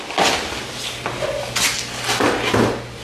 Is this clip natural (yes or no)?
yes